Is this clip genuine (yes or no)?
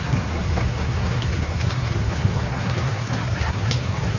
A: no